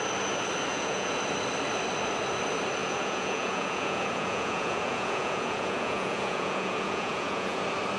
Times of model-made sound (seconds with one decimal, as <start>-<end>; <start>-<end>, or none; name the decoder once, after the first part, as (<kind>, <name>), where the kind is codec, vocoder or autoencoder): 0.7-1.2 (vocoder, Vocos); 2.8-7.6